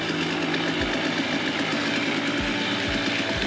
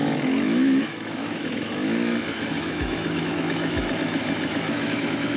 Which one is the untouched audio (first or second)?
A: first